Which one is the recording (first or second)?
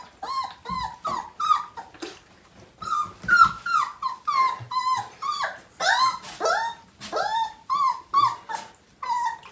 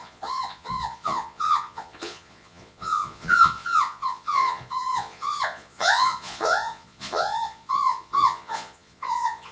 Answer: first